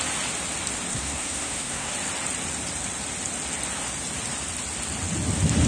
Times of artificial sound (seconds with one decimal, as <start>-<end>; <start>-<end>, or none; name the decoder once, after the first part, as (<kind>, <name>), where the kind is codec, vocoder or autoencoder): 0.9-1.9 (codec, SNAC)